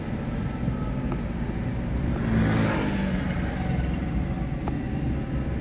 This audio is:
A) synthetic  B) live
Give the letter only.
B